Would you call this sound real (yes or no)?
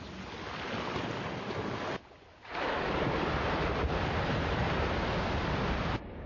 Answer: yes